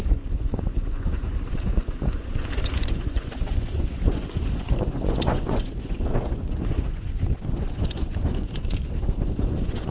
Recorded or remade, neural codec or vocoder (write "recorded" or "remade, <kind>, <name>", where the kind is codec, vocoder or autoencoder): remade, vocoder, Vocos